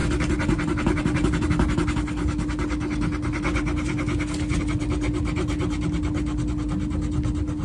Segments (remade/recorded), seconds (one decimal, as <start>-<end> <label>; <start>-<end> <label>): 0.0-7.6 recorded